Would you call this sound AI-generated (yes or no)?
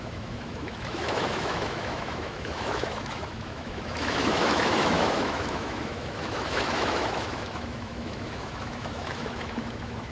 yes